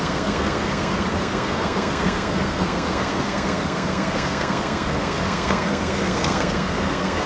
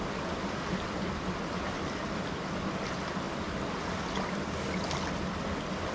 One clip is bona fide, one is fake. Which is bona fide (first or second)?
second